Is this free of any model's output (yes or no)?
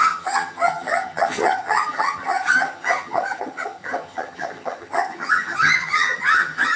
no